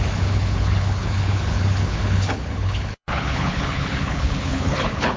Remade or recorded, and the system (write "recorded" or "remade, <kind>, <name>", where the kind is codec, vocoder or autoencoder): remade, codec, HILCodec